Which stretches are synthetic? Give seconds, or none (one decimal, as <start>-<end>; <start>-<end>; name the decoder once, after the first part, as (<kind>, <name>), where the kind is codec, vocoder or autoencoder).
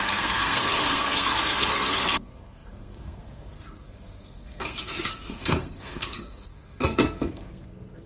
0.0-8.1 (codec, SNAC)